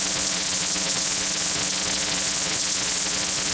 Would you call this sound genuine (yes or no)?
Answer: no